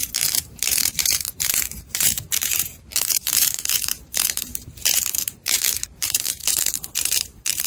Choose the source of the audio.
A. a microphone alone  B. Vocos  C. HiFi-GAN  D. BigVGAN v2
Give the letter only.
D